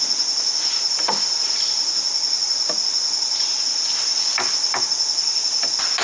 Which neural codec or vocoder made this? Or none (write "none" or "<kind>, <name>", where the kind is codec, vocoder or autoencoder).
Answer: none